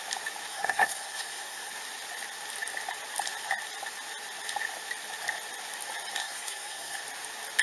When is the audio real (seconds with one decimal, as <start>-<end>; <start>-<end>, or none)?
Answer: 0.0-0.5; 1.7-6.2; 7.0-7.6